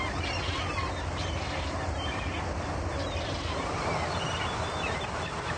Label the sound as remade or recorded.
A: recorded